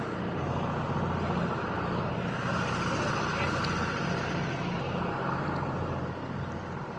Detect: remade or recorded recorded